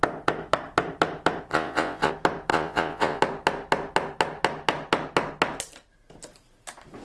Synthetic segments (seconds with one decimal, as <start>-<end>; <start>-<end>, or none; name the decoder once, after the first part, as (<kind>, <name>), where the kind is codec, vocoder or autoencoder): 1.5-2.1 (vocoder, Vocos); 2.5-3.2